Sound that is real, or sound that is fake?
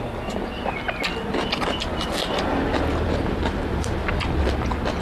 real